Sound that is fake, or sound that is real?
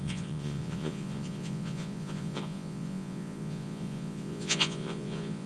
fake